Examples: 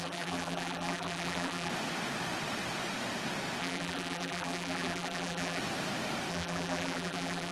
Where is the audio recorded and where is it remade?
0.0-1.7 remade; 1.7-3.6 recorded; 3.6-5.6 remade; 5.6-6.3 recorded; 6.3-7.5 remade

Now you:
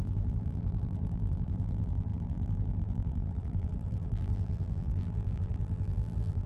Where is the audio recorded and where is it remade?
0.0-6.5 remade

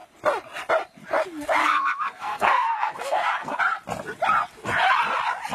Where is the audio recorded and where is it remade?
0.0-1.6 recorded; 1.6-3.6 remade; 3.6-5.5 recorded